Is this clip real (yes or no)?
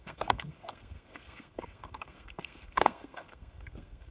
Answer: no